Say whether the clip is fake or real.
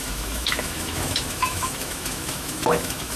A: fake